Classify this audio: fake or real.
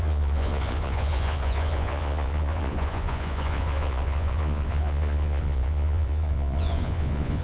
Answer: fake